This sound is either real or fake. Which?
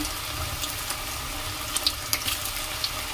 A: real